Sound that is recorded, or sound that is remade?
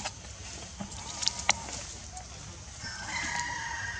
recorded